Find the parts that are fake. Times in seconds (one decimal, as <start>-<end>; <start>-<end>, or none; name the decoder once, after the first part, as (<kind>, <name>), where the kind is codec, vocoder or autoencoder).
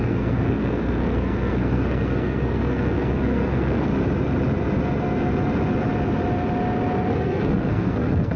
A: 0.0-3.9 (codec, SNAC); 7.1-8.4